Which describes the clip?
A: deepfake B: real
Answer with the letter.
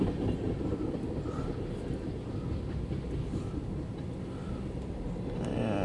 B